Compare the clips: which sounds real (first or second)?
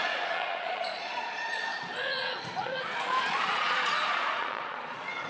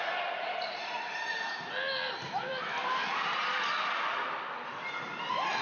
second